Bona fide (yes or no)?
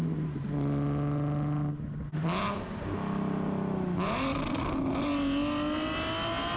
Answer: yes